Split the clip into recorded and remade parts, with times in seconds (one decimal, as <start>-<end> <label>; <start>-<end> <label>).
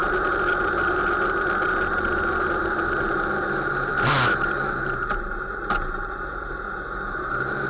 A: 0.0-7.7 recorded